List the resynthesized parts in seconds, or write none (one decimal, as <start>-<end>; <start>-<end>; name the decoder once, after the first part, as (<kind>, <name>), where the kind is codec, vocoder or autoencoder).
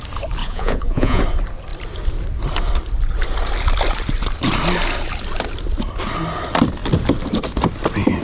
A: 0.4-1.2 (vocoder, Vocos)